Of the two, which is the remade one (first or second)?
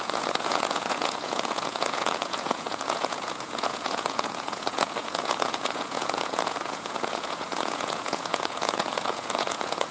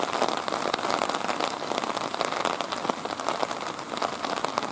first